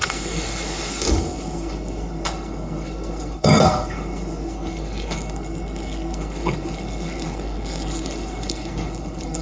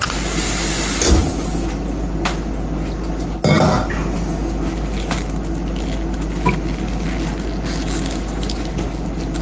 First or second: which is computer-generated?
first